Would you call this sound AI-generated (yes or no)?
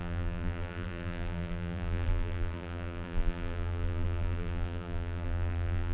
yes